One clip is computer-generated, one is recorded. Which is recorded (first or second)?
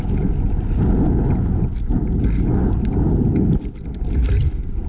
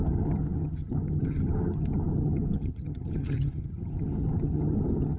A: first